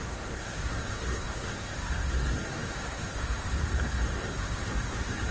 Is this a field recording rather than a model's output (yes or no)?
no